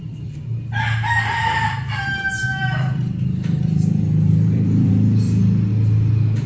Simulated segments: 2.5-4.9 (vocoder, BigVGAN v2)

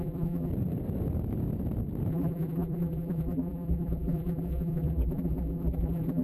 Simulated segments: 0.0-0.5 (vocoder, BigVGAN v2); 2.1-6.2

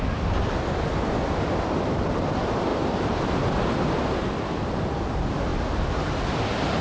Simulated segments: 0.0-2.7 (vocoder, BigVGAN v2); 4.6-5.5; 6.3-6.8

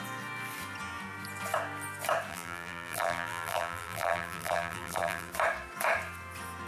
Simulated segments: 2.3-5.3 (vocoder, BigVGAN v2)

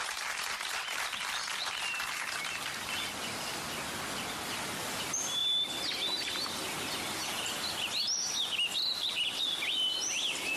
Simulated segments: none

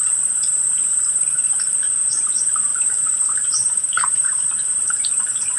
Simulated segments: 2.7-4.4 (vocoder, BigVGAN v2)